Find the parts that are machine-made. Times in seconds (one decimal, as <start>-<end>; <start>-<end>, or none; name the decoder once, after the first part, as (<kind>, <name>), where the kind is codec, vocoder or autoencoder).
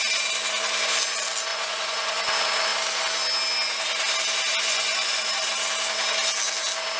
1.5-2.3 (vocoder, Vocos); 4.7-5.5